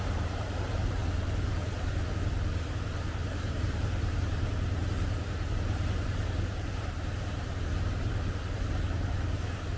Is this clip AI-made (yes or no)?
yes